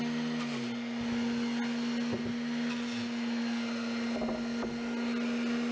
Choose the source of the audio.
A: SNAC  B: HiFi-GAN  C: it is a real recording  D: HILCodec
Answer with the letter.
C